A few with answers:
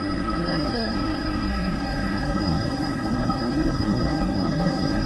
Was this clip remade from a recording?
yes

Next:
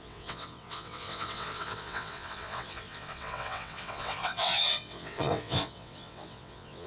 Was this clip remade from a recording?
yes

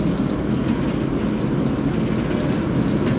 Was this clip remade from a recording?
no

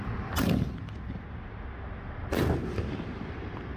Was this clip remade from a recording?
no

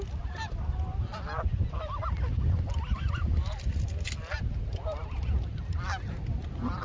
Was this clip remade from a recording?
no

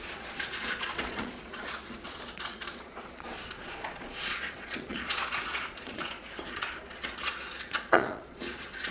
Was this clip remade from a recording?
yes